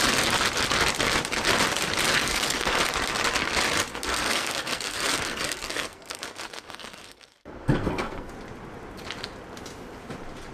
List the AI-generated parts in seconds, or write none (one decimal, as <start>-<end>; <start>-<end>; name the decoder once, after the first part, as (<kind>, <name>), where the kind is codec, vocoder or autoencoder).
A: 2.2-2.8 (codec, SNAC); 3.9-8.3